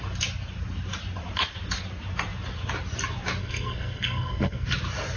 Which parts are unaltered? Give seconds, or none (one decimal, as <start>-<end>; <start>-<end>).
0.0-3.4; 4.7-5.2